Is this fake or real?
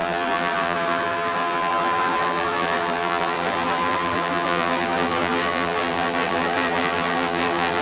fake